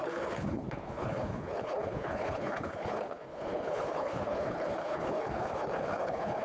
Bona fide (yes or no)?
no